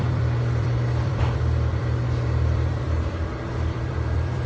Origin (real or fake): fake